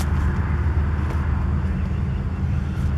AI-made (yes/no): no